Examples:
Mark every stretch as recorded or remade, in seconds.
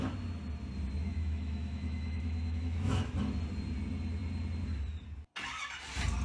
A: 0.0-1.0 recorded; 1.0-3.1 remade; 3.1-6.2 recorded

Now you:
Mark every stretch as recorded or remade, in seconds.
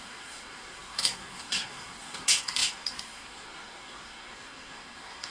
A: 0.0-5.3 remade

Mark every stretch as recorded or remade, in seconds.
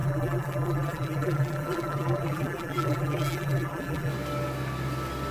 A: 0.0-4.1 remade; 4.1-5.3 recorded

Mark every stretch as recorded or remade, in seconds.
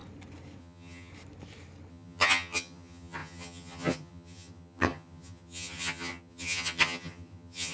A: 0.0-0.6 recorded; 0.6-1.1 remade; 1.1-1.9 recorded; 1.9-7.7 remade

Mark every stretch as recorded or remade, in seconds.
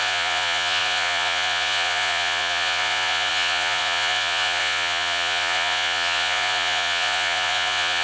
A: 0.0-8.0 remade